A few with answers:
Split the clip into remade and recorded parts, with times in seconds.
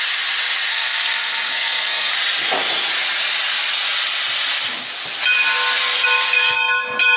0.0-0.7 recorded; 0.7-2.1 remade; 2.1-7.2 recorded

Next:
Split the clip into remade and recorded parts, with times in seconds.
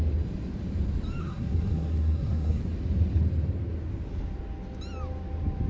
0.0-1.2 recorded; 1.2-2.6 remade; 2.6-5.7 recorded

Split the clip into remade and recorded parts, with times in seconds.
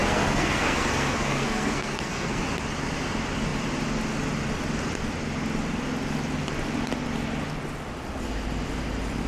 0.0-2.4 remade; 2.4-9.3 recorded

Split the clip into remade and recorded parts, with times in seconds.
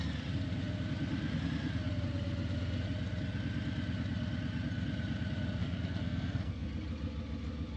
0.0-5.6 recorded; 5.6-6.7 remade; 6.7-7.8 recorded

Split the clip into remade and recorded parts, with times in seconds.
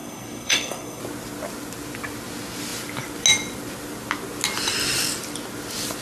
0.0-1.0 remade; 1.0-6.0 recorded